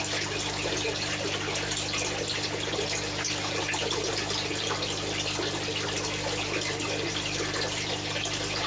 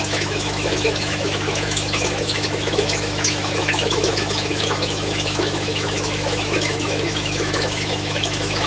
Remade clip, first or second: second